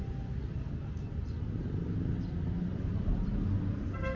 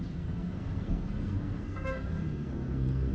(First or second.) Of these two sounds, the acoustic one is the first